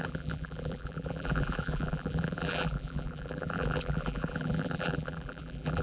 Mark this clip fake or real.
fake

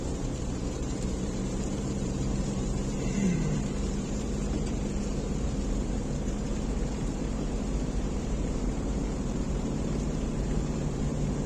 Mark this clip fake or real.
fake